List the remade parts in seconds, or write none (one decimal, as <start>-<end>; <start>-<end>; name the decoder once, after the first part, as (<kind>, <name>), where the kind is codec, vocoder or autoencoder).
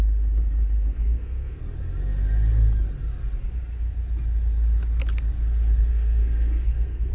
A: 0.9-1.6 (codec, SNAC); 5.9-7.1